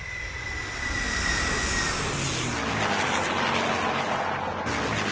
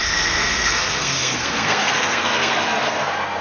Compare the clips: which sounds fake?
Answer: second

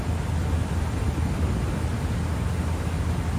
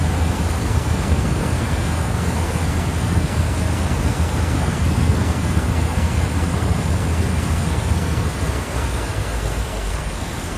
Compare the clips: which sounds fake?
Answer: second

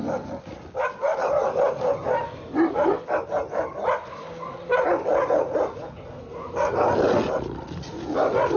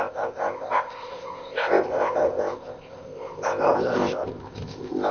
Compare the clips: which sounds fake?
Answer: second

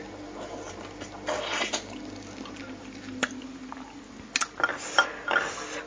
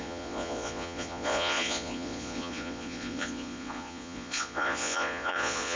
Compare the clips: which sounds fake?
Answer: second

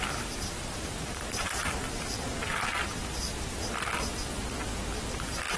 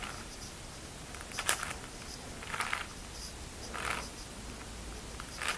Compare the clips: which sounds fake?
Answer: first